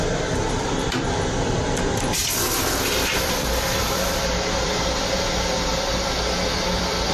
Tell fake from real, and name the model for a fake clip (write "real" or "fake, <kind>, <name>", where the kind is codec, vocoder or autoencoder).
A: fake, vocoder, BigVGAN v2